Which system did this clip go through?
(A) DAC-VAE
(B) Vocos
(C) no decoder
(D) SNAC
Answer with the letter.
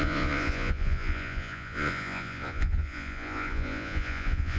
B